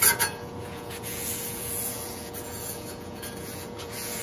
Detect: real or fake fake